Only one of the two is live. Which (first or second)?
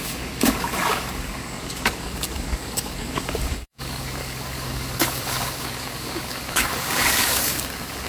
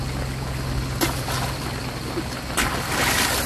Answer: second